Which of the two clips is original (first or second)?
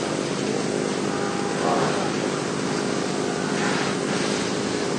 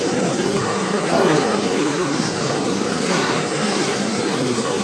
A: first